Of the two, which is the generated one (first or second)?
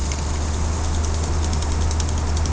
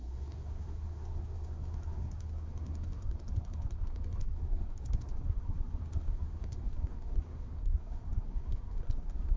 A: second